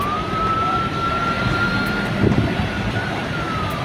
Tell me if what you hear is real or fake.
fake